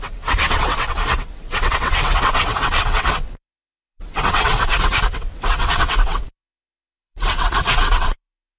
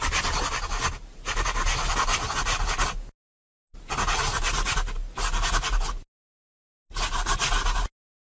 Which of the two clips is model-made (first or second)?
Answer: first